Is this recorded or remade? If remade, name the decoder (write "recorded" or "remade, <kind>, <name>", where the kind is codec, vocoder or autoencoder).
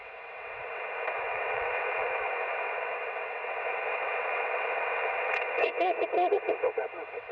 remade, vocoder, WaveNeXt